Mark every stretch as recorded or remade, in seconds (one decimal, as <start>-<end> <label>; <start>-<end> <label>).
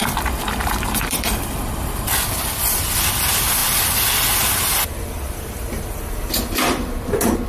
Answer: 0.0-7.5 remade